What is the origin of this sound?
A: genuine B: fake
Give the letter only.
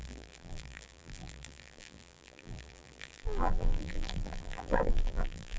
B